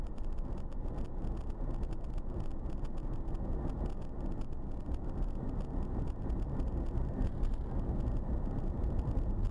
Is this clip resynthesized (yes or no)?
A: no